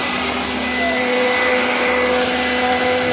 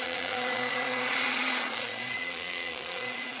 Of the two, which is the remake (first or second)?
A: second